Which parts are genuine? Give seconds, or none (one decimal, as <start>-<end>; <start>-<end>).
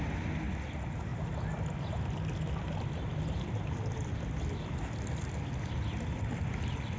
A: 0.0-1.1; 3.9-7.0